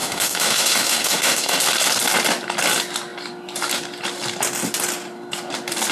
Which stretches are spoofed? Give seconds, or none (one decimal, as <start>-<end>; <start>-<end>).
0.0-1.6